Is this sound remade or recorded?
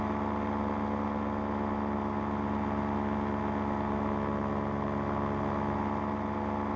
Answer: recorded